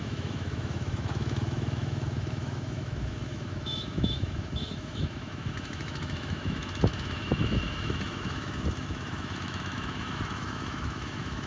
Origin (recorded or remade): remade